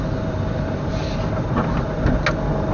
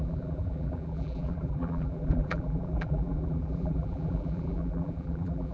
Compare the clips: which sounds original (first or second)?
first